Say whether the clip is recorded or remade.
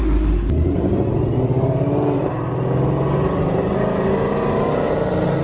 recorded